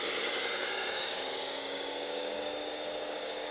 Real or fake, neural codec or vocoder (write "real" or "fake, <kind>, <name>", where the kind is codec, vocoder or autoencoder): fake, codec, DAC